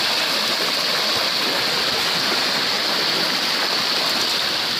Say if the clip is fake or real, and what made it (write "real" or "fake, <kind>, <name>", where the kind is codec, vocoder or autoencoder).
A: real